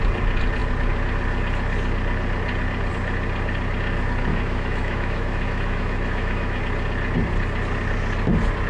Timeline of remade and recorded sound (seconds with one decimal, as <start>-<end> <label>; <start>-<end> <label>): 0.0-4.3 recorded; 4.3-6.6 remade; 6.6-8.7 recorded